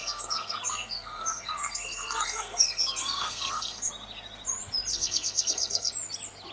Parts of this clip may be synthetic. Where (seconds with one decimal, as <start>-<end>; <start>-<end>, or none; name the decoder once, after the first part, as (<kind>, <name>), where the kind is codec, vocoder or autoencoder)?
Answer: 0.0-3.9 (codec, SNAC); 4.9-5.9